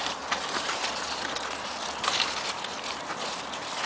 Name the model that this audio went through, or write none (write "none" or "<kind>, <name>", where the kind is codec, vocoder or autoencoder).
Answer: vocoder, BigVGAN v2